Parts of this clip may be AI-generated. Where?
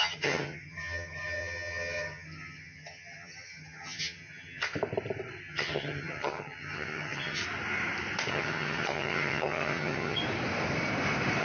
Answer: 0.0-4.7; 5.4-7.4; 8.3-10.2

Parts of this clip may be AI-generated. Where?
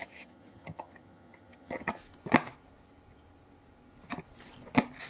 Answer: 0.0-2.0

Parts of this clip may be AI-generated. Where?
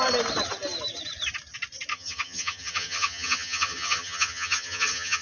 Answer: 1.9-5.2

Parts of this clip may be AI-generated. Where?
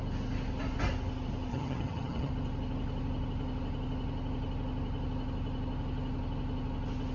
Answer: 1.5-2.3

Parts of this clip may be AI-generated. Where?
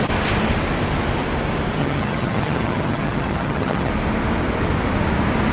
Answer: 1.8-3.9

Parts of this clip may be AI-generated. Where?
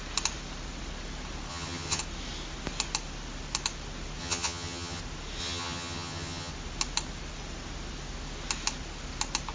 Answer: 1.5-2.0; 4.2-5.0; 5.4-6.5